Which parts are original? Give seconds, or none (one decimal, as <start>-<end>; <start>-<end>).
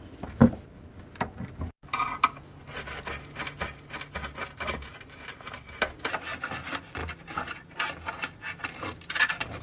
0.0-9.6